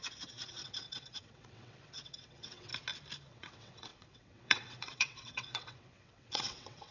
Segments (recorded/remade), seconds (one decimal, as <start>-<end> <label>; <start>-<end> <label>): 0.0-2.7 remade; 2.7-3.3 recorded; 3.3-6.9 remade